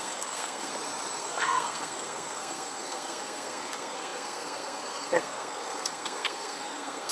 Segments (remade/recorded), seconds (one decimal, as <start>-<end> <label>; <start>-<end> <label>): 0.0-0.7 remade; 0.7-1.2 recorded; 1.2-7.1 remade

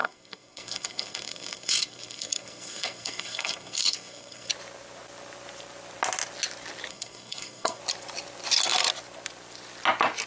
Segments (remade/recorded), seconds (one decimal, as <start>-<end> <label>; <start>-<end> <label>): 0.0-4.5 remade; 4.5-6.9 recorded; 6.9-7.8 remade; 7.8-10.3 recorded

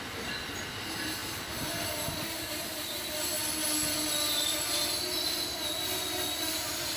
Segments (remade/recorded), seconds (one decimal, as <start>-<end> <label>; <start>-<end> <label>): 0.0-7.0 recorded

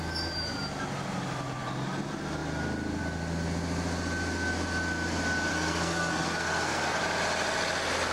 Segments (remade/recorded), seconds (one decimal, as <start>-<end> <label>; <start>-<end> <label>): 0.0-5.5 recorded; 5.5-7.0 remade; 7.0-8.1 recorded

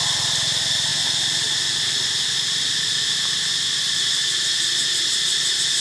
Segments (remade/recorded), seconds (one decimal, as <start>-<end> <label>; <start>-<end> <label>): 0.0-5.8 recorded